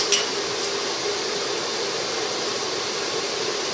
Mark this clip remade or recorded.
recorded